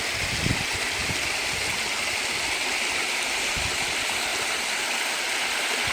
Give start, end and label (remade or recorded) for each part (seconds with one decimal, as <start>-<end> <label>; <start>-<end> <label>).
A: 0.0-1.0 recorded; 1.0-2.0 remade; 2.0-2.6 recorded; 2.6-3.5 remade; 3.5-4.3 recorded; 4.3-5.9 remade